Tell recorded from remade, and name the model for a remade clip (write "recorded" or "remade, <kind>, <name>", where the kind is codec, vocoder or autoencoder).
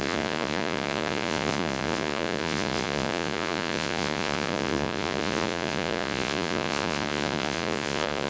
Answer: remade, vocoder, Vocos